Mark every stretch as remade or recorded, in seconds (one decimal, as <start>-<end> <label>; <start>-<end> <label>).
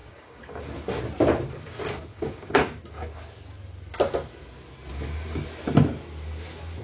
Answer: 0.0-1.0 remade; 1.0-2.1 recorded; 2.1-2.8 remade; 2.8-4.9 recorded; 4.9-5.4 remade; 5.4-6.8 recorded